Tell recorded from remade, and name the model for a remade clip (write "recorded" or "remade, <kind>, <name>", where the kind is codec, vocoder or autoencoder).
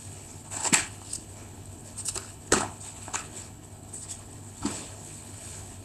remade, codec, HILCodec